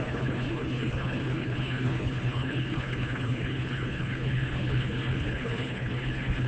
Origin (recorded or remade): remade